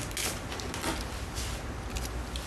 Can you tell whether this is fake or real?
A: real